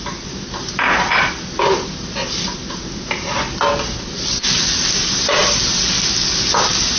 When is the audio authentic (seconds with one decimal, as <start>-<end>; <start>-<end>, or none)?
0.0-7.0